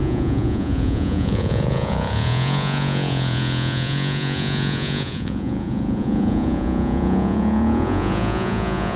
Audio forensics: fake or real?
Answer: fake